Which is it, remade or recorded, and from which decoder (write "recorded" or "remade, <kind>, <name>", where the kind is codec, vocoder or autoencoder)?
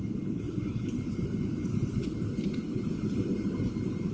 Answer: recorded